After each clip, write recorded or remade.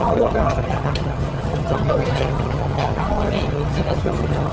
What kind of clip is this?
remade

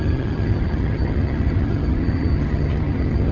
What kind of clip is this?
remade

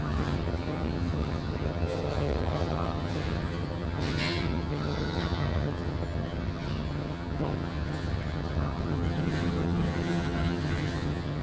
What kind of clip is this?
remade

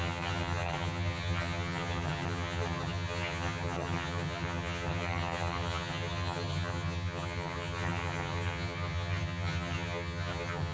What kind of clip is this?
remade